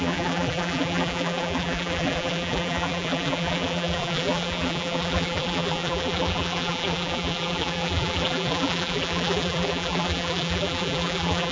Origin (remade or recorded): remade